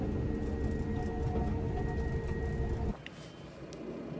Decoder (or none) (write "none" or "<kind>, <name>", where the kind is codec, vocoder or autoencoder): none